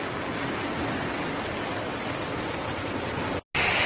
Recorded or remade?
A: recorded